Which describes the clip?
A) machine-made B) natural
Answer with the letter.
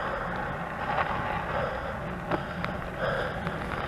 B